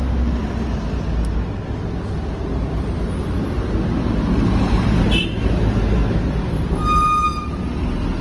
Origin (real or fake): real